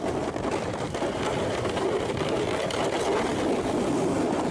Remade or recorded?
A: remade